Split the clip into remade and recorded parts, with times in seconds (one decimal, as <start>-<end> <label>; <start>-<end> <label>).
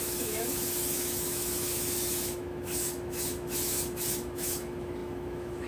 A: 0.0-5.7 remade